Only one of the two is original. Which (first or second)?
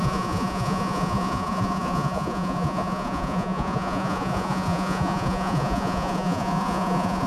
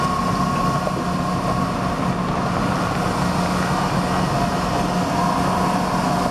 second